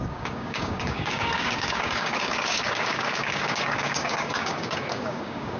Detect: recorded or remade remade